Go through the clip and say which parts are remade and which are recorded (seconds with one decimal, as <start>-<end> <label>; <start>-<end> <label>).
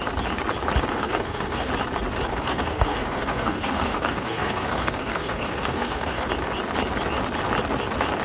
0.0-0.9 recorded; 0.9-1.7 remade; 1.7-2.3 recorded; 2.3-6.3 remade; 6.3-8.2 recorded